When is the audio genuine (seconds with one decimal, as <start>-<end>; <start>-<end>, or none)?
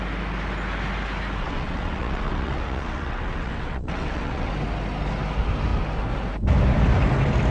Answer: 0.0-1.4; 4.5-7.5